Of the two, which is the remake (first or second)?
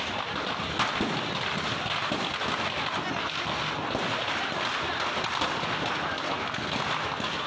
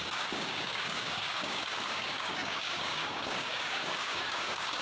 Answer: second